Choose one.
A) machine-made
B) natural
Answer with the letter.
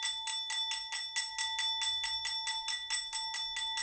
B